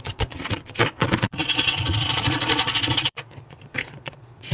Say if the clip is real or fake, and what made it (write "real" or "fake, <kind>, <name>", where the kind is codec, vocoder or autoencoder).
fake, vocoder, Vocos